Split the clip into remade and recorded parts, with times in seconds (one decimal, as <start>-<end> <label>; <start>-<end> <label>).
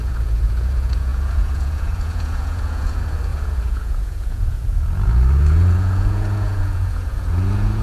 0.0-7.8 remade